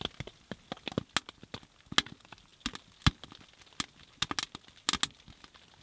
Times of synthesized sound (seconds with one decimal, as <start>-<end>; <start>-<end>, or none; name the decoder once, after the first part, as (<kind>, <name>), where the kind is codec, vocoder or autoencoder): none